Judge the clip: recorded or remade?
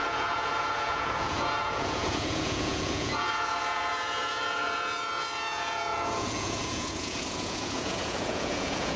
remade